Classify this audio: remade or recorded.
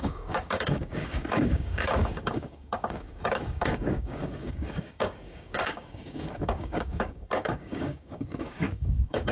remade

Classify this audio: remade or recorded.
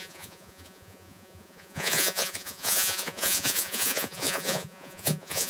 remade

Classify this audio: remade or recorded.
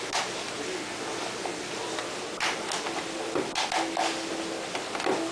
recorded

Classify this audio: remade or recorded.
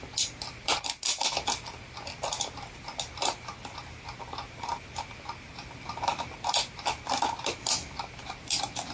recorded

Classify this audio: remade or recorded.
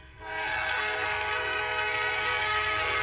remade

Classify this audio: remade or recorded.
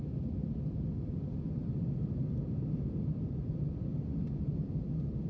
recorded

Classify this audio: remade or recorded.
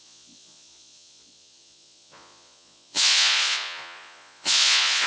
remade